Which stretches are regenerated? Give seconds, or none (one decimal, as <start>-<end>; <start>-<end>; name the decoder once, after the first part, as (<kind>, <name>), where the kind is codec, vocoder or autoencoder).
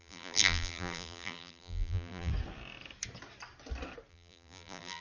0.0-2.3 (vocoder, BigVGAN v2); 4.1-5.0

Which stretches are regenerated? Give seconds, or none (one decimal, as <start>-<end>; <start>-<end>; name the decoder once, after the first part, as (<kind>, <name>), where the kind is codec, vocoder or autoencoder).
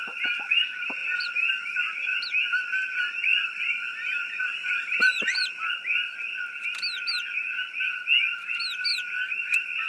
1.0-1.9 (vocoder, BigVGAN v2); 3.3-6.2; 8.9-9.9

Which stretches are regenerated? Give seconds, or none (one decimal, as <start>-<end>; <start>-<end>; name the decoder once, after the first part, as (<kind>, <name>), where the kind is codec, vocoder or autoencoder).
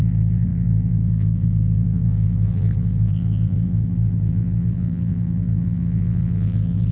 0.0-6.9 (vocoder, BigVGAN v2)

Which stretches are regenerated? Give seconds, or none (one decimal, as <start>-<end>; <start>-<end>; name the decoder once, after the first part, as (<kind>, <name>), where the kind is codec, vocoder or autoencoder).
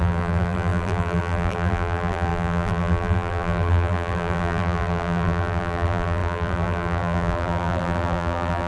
0.0-8.7 (vocoder, BigVGAN v2)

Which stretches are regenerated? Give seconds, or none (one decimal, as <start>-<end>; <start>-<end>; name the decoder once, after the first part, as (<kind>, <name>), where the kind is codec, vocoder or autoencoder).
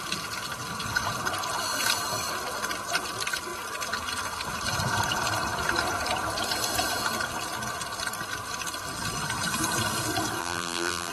10.4-11.1 (vocoder, BigVGAN v2)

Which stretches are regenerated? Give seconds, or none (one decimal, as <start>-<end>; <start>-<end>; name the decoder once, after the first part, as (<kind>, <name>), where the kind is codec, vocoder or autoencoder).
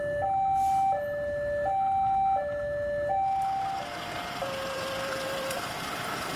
4.4-5.7 (vocoder, BigVGAN v2)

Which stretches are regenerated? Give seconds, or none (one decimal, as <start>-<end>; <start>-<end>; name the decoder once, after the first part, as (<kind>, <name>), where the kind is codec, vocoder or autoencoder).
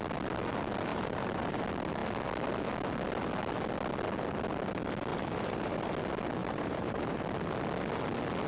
0.9-1.6 (vocoder, BigVGAN v2); 5.1-5.9; 6.4-7.2